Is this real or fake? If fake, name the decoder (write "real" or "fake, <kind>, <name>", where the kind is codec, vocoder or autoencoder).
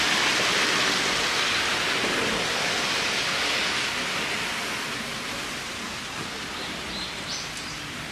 real